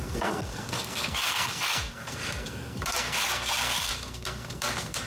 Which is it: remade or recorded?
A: remade